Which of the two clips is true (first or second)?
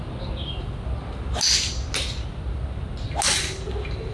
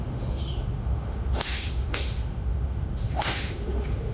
first